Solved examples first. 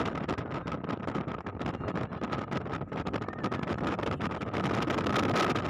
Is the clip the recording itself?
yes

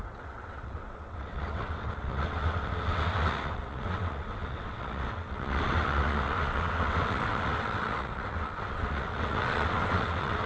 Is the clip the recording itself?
no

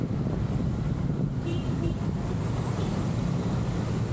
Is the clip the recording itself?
yes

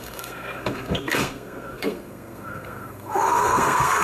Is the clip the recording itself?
no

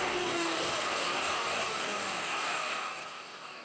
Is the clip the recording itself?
no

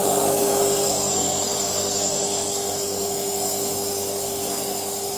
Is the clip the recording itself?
no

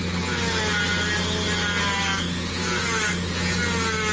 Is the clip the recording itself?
yes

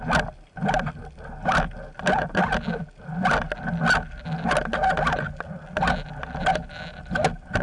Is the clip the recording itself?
yes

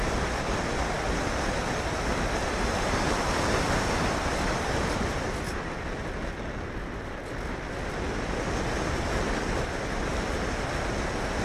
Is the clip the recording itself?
yes